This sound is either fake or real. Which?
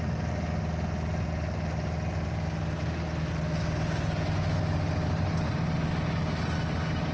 real